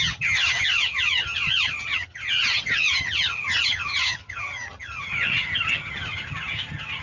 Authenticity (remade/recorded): remade